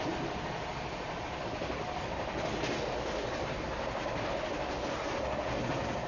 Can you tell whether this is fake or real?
real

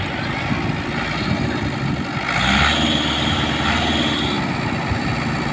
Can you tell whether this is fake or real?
real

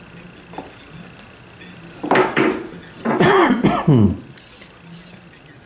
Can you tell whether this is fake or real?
real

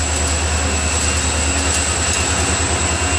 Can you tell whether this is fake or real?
real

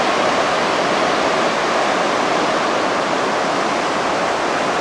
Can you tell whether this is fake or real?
real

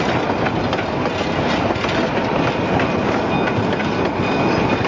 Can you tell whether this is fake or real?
real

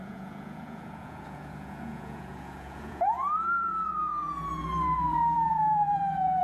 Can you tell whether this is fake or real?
fake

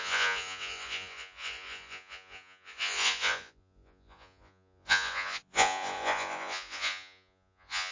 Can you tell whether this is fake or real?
fake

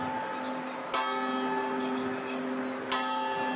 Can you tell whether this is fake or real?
real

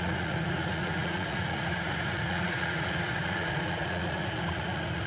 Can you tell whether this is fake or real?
fake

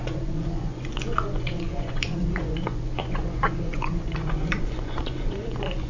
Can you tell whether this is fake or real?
fake